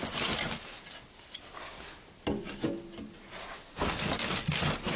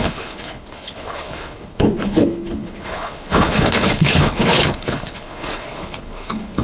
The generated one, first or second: second